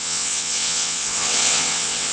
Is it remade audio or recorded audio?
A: remade